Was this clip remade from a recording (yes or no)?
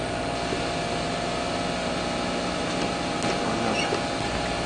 no